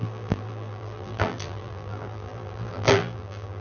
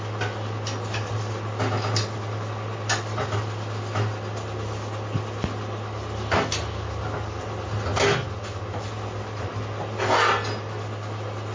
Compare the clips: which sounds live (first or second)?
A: second